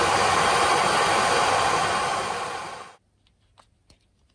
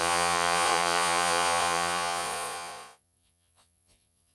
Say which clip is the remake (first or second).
second